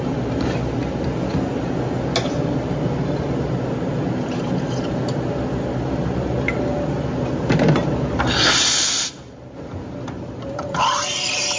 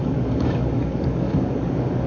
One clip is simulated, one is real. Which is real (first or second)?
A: first